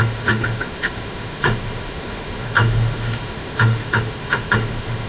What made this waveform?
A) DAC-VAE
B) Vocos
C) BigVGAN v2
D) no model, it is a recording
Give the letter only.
A